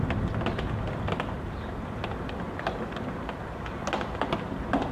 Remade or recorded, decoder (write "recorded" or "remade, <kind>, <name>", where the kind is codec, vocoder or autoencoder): recorded